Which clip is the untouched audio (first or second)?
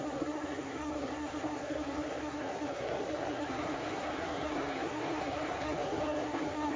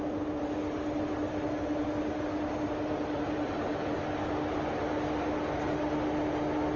second